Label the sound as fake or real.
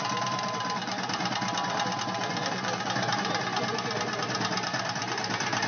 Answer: real